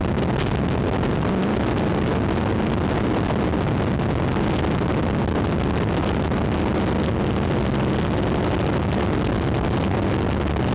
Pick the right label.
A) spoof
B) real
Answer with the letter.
B